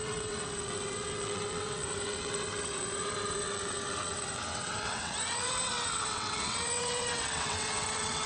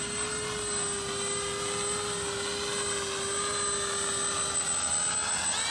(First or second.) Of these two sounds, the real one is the second